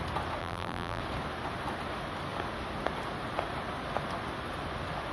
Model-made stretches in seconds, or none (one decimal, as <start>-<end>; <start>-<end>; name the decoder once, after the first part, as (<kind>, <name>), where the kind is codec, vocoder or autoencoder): 0.4-1.0 (vocoder, BigVGAN v2)